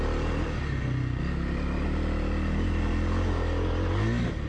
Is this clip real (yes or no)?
yes